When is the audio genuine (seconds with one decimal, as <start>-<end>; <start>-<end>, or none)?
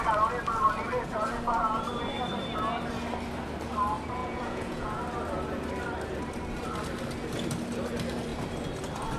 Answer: 0.0-4.2; 5.0-9.2